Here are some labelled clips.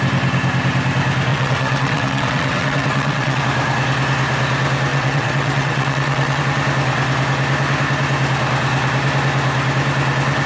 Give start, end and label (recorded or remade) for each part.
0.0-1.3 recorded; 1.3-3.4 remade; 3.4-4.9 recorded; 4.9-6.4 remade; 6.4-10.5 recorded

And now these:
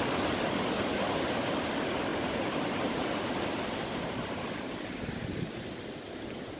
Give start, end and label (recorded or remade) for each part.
0.0-2.1 recorded; 2.1-3.1 remade; 3.1-6.6 recorded